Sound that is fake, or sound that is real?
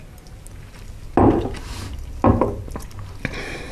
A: real